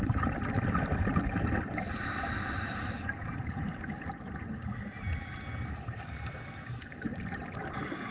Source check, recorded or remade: recorded